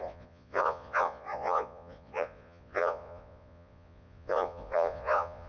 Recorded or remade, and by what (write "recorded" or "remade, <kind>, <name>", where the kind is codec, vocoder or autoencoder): remade, vocoder, Vocos